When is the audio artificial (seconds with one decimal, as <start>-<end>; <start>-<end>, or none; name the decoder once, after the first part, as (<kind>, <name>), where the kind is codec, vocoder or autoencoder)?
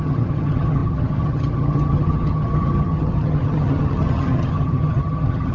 0.0-5.5 (vocoder, HiFi-GAN)